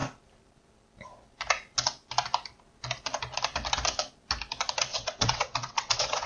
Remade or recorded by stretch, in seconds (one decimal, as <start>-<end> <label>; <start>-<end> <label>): 0.0-4.9 recorded; 4.9-6.3 remade